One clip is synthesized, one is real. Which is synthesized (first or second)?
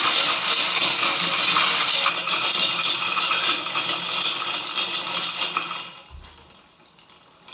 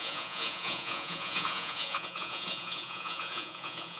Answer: second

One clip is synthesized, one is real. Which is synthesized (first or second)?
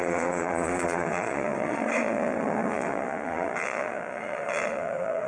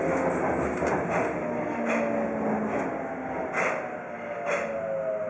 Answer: first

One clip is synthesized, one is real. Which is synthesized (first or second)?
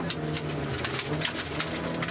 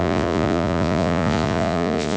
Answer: second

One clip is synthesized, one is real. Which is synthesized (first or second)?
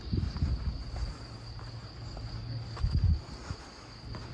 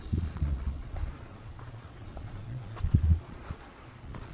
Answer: second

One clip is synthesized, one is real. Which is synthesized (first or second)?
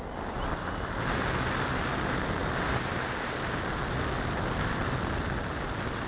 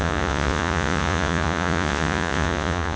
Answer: second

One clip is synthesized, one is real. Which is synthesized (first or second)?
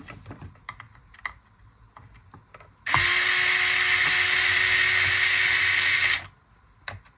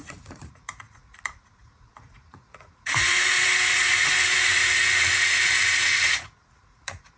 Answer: second